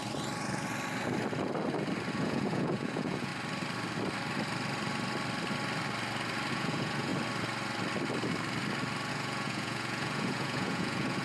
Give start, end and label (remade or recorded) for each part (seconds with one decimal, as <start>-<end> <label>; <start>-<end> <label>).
0.0-2.2 recorded; 2.2-3.3 remade; 3.3-6.5 recorded; 6.5-7.1 remade; 7.1-9.1 recorded; 9.1-11.2 remade